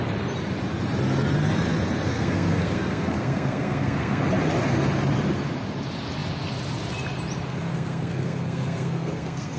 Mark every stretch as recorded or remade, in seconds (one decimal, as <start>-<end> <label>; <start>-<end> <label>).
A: 0.0-2.1 recorded; 2.1-4.2 remade; 4.2-7.5 recorded; 7.5-9.6 remade